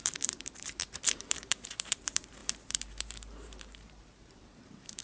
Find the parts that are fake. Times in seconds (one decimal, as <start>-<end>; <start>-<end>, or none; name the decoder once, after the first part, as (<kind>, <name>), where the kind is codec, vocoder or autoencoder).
0.0-5.0 (vocoder, BigVGAN v2)